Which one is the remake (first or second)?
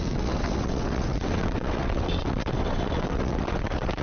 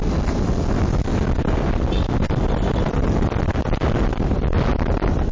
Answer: first